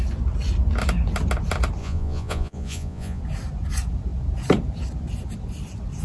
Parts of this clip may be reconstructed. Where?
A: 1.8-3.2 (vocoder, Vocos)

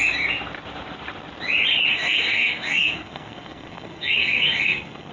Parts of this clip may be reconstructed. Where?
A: 1.9-5.1 (codec, SNAC)

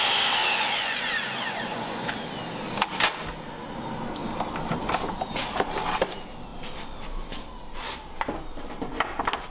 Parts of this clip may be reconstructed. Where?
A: 0.4-2.1 (vocoder, Vocos)